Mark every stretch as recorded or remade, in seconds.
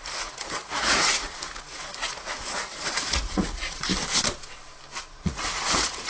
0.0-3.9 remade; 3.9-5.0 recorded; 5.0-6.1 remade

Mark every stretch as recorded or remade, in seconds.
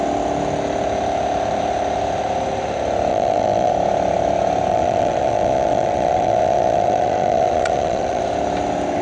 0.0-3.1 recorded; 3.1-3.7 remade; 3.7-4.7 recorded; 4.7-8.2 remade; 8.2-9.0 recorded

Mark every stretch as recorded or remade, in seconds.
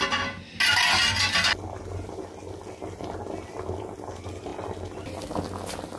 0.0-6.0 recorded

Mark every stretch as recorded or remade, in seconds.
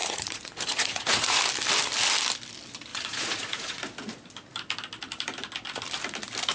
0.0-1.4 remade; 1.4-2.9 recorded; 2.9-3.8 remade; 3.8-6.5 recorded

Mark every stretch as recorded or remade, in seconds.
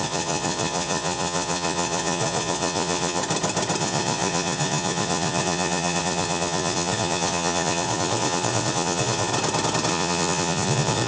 0.0-3.2 remade; 3.2-3.8 recorded; 3.8-9.3 remade; 9.3-9.9 recorded; 9.9-11.1 remade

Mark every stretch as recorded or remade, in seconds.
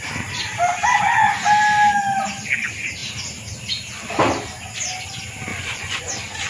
0.0-5.5 recorded; 5.5-6.1 remade; 6.1-6.5 recorded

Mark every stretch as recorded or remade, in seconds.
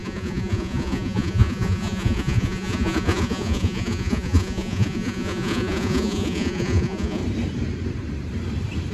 0.0-7.2 remade; 7.2-8.9 recorded